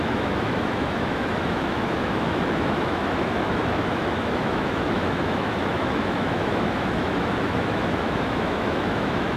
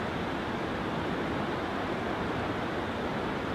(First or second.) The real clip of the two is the second